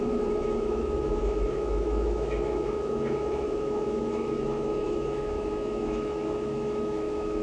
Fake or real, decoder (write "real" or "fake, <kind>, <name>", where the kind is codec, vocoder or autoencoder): fake, autoencoder, DAC-VAE